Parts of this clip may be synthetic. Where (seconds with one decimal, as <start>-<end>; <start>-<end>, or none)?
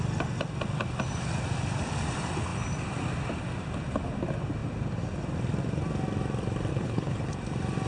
6.7-7.3